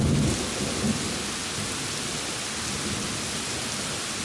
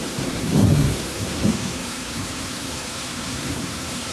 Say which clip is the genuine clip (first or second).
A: first